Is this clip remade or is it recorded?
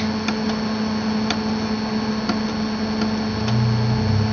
recorded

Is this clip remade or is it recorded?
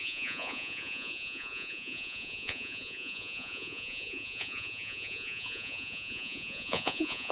remade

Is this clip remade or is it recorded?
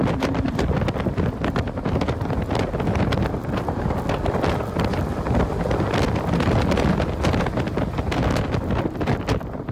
recorded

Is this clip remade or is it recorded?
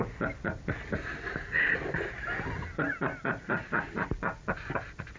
recorded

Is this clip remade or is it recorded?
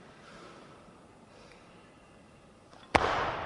remade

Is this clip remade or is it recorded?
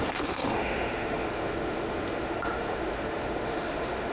remade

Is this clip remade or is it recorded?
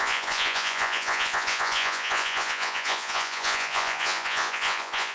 remade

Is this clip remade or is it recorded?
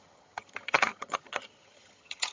remade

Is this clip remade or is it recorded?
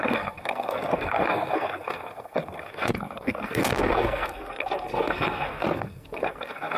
remade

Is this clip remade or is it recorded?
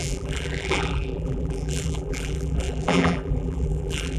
remade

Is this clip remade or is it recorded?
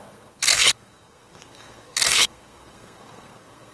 remade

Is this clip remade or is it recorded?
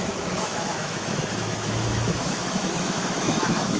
remade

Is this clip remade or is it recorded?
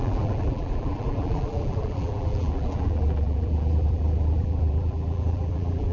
remade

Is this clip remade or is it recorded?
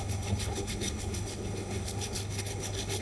remade